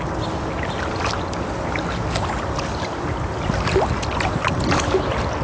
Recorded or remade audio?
recorded